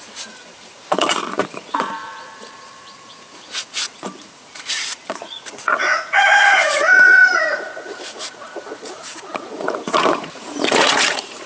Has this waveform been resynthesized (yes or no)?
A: yes